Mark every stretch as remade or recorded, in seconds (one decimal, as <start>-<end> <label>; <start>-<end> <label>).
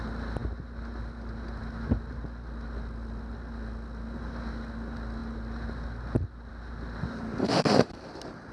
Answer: 0.0-7.4 recorded; 7.4-7.9 remade; 7.9-8.5 recorded